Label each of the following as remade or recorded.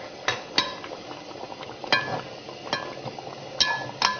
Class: recorded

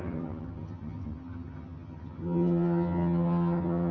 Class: remade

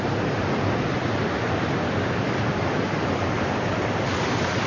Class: recorded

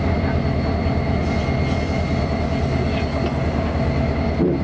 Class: recorded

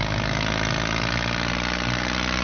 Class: recorded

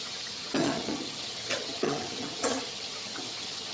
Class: remade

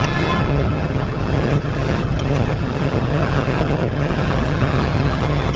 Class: remade